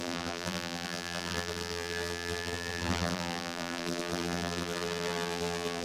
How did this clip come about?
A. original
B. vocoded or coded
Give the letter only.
B